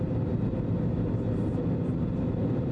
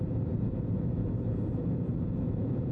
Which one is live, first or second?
first